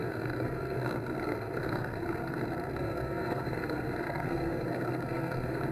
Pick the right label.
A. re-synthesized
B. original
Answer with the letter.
A